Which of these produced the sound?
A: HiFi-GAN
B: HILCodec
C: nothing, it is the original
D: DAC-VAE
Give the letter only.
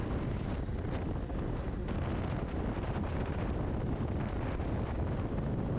C